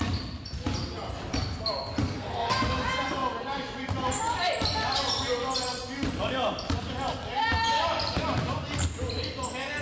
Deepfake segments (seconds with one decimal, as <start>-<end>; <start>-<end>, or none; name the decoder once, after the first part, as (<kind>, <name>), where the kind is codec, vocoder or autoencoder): 2.0-2.6 (codec, SNAC)